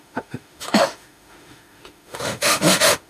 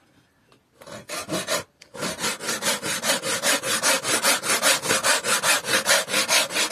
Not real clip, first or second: first